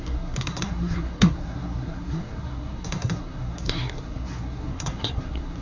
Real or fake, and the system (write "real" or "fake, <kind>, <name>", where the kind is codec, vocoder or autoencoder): fake, codec, SNAC